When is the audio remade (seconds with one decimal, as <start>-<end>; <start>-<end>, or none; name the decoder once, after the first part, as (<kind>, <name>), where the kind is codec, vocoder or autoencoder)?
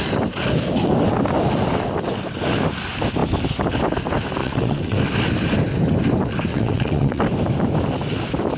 4.4-5.0 (vocoder, WaveNeXt); 6.5-7.2